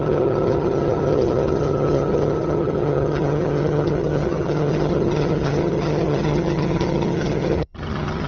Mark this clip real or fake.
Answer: fake